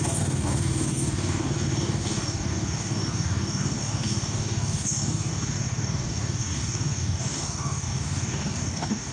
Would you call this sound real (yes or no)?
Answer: no